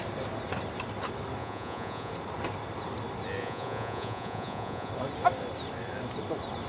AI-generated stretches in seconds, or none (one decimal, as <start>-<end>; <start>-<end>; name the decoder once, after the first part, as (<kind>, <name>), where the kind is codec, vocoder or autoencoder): 1.4-2.1 (vocoder, Vocos); 3.4-4.9